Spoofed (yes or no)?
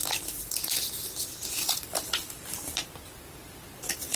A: no